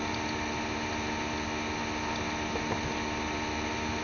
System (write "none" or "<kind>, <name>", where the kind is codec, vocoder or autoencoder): none